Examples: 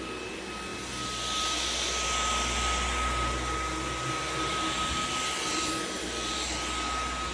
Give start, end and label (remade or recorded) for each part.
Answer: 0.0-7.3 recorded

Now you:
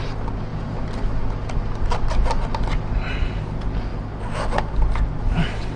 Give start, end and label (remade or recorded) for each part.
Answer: 0.0-5.8 recorded

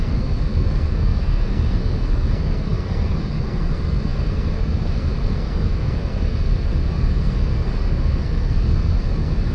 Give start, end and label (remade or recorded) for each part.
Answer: 0.0-9.5 remade